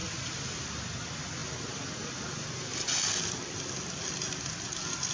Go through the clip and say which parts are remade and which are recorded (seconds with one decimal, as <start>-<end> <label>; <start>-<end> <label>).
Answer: 0.0-5.1 recorded